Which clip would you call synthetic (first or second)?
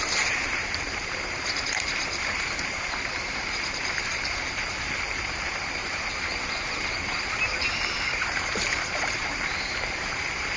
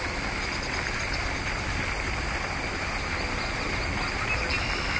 first